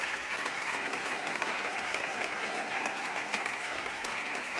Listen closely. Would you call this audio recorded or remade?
remade